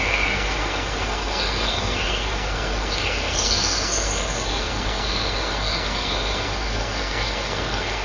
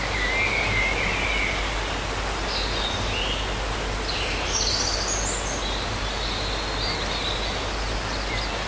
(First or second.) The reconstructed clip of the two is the first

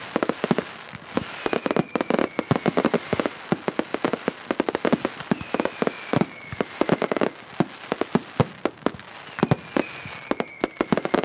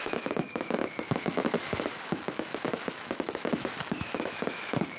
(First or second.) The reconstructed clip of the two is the second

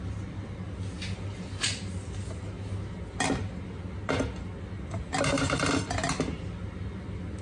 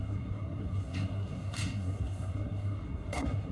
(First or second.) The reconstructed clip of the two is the second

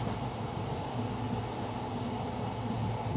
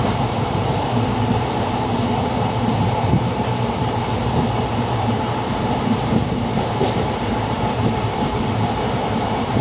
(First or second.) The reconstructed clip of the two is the second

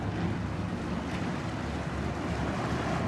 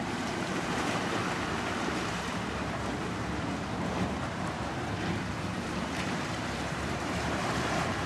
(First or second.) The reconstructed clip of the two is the second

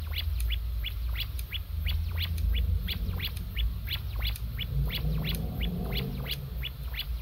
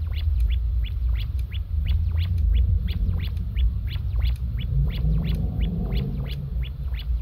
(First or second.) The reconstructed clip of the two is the second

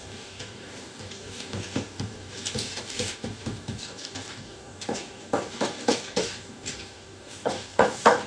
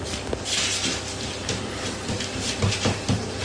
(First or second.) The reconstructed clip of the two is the first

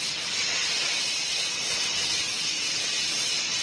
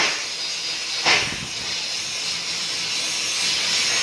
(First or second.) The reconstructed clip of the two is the first